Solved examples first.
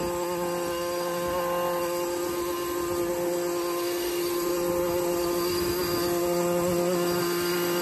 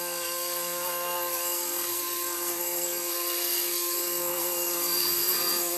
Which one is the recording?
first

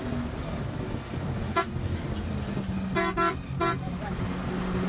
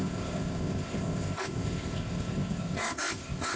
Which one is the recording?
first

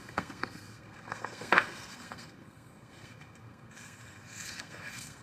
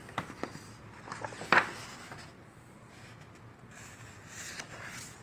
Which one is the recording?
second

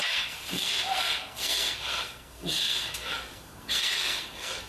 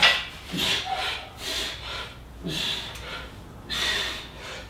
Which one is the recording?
second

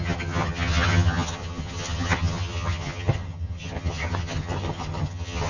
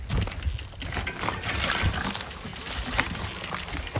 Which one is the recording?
second